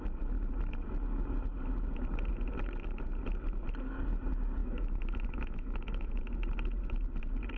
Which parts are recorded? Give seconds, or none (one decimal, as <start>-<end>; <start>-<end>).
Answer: 0.0-4.6; 6.2-7.6